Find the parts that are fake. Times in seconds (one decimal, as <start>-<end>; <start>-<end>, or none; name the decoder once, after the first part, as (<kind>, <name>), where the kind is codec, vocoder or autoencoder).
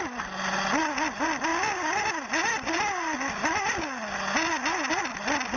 none